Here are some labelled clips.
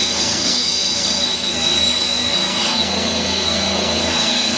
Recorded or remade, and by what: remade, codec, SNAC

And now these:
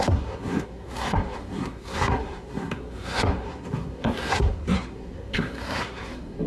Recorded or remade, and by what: remade, codec, SNAC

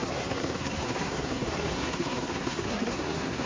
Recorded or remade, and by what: remade, codec, SNAC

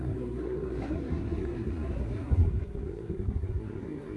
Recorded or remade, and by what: remade, codec, SNAC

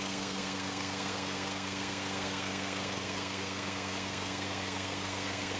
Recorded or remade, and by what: remade, codec, SNAC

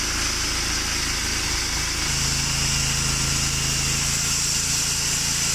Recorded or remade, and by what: recorded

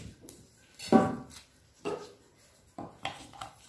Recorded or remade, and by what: recorded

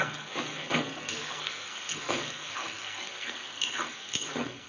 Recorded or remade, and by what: remade, codec, SNAC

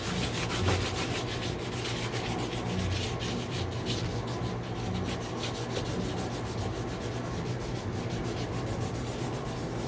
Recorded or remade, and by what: recorded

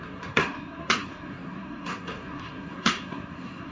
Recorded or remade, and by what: remade, codec, SNAC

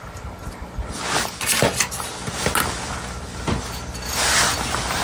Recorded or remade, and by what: recorded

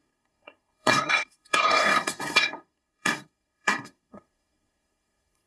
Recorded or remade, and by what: remade, codec, SNAC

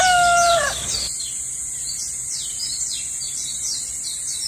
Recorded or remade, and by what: recorded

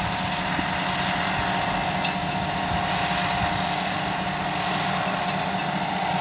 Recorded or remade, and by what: recorded